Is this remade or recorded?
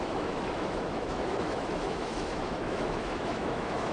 remade